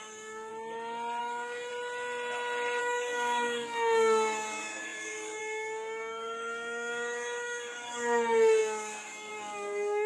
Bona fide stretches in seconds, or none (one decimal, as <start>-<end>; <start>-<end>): 0.5-1.2; 1.7-2.8